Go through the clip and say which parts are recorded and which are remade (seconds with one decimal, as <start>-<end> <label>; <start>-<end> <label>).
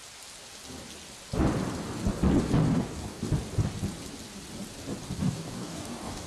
0.0-2.6 recorded; 2.6-3.2 remade; 3.2-5.2 recorded; 5.2-6.3 remade